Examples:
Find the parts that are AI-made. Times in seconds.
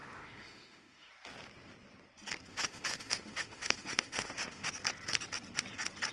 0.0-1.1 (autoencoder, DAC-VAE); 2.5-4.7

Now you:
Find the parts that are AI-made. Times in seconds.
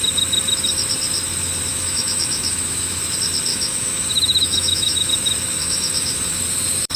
1.7-3.0 (autoencoder, DAC-VAE); 3.5-5.1; 5.6-6.4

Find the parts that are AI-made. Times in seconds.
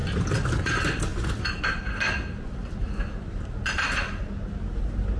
none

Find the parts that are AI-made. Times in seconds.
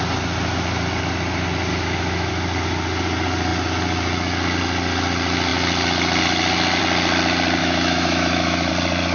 1.7-2.3 (autoencoder, DAC-VAE); 7.6-8.7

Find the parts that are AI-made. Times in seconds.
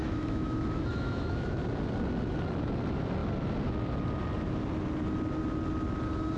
0.0-1.6 (autoencoder, DAC-VAE)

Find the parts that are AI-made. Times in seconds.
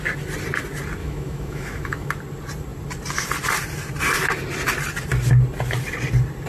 1.0-2.1 (autoencoder, DAC-VAE)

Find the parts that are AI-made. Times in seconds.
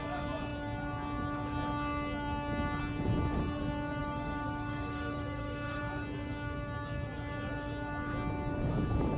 4.0-5.8 (autoencoder, DAC-VAE)